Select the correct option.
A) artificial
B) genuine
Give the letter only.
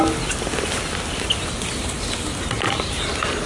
B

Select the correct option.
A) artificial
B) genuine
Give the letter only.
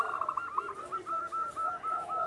B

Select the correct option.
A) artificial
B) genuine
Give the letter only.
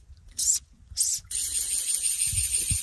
A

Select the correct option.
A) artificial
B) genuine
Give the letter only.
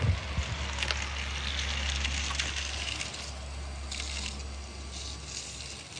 B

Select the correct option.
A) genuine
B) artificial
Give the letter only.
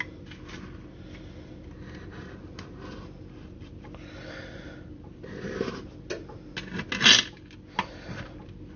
A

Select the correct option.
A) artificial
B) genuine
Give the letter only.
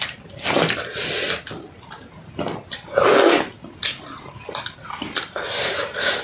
B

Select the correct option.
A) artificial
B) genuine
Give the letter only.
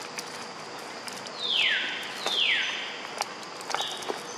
B